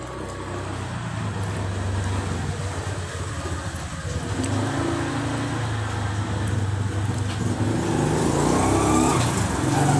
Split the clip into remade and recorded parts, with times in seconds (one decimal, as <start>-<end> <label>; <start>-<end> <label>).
0.0-10.0 recorded